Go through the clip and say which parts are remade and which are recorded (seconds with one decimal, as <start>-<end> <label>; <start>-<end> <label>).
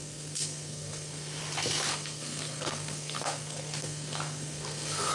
0.0-1.4 remade; 1.4-1.9 recorded; 1.9-5.1 remade